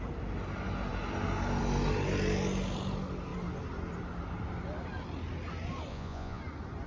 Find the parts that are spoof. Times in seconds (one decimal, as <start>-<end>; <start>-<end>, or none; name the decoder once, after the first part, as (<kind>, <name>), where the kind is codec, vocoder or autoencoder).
5.9-6.4 (vocoder, Vocos)